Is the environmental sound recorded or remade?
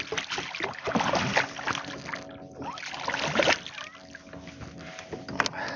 recorded